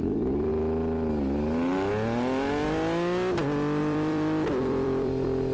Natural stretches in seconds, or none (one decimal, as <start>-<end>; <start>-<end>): 0.5-3.8